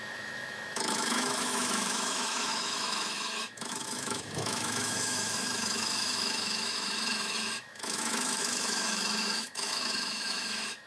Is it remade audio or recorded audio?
remade